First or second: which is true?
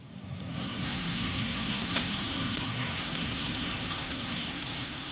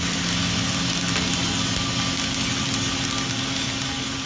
second